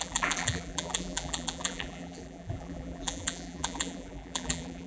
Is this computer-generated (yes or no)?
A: yes